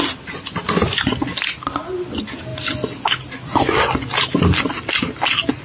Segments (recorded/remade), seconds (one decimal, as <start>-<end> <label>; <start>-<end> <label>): 0.0-5.6 recorded